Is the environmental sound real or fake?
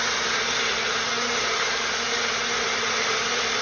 real